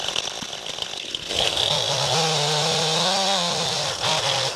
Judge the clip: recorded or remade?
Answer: recorded